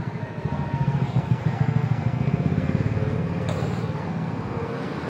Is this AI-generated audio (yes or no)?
yes